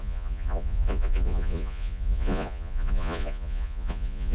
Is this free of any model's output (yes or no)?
no